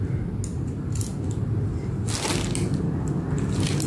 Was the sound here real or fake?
real